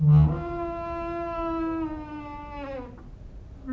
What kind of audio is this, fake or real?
real